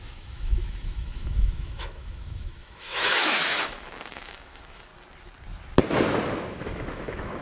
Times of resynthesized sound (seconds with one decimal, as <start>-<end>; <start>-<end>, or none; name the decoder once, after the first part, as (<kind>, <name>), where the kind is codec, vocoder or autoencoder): 0.0-4.9 (autoencoder, DAC-VAE); 6.5-7.4